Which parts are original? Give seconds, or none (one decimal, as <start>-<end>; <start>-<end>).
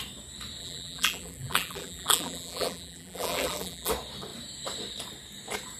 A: 0.0-0.6; 3.9-5.8